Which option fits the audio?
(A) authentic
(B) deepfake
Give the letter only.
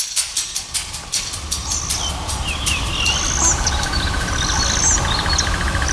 A